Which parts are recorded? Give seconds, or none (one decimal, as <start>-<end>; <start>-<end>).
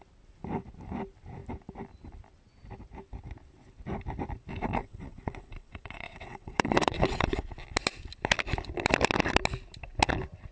0.0-4.8; 7.4-10.5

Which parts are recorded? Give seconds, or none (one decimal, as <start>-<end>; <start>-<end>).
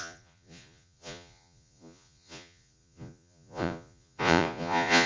none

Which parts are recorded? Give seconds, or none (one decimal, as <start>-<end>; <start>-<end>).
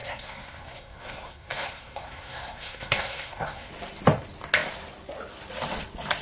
3.7-6.2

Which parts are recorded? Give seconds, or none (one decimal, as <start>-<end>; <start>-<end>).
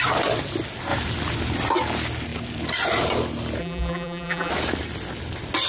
0.0-3.6; 4.5-5.7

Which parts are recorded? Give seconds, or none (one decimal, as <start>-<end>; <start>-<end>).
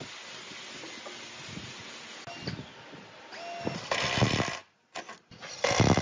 0.0-0.6; 1.6-6.0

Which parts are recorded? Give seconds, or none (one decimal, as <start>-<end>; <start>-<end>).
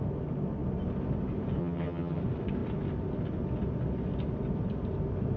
0.0-1.6; 2.2-5.4